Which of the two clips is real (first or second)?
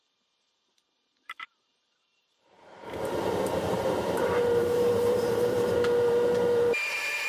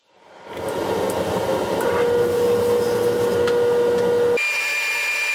second